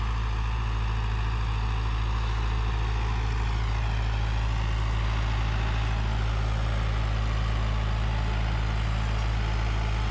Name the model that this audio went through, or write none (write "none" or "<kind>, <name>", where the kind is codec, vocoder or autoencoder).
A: none